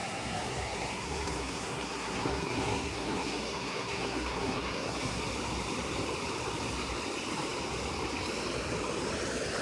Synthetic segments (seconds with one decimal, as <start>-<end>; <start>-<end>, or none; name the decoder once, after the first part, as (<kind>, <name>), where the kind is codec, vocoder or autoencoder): 0.0-5.2 (codec, SNAC)